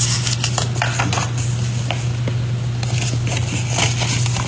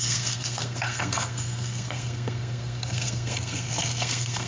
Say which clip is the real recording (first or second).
first